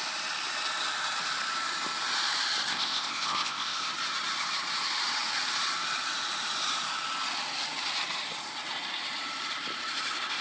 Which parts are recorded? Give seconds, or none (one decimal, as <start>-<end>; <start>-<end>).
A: 0.0-2.7; 3.9-10.4

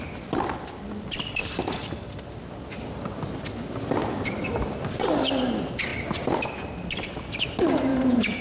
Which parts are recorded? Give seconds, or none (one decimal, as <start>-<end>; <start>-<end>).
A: 0.0-7.9

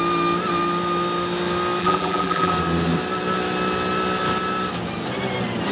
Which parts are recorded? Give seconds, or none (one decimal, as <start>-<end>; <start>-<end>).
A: 0.0-1.8; 2.5-5.7

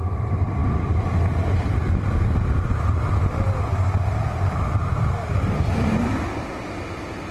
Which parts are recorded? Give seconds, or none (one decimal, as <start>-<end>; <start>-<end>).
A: 0.0-7.3

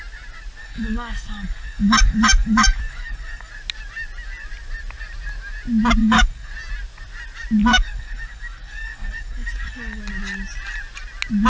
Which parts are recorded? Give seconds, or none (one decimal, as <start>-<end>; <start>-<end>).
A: 0.0-0.6; 3.5-6.0; 6.5-7.6; 10.0-11.5

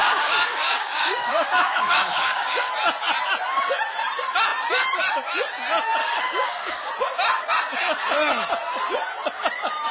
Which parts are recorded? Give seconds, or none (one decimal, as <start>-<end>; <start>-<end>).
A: 2.7-6.0; 6.9-9.9

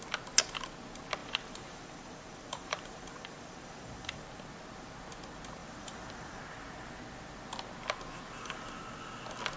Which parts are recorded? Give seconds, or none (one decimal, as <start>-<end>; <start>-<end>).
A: 0.0-1.2; 4.2-5.6; 6.4-9.6